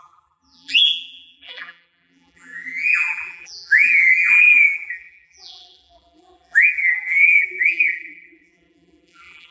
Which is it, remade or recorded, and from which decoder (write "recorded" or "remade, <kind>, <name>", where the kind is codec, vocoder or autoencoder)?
remade, vocoder, BigVGAN v2